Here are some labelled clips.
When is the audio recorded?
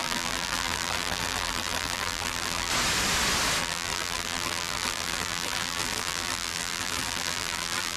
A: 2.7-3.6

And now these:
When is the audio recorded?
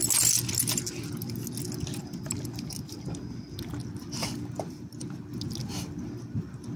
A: 0.0-6.8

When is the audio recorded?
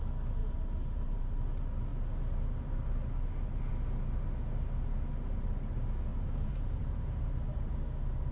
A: 0.0-0.4; 1.4-6.1; 7.7-8.3